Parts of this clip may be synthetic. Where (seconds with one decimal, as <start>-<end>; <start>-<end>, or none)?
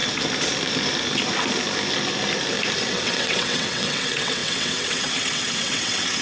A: 2.9-6.2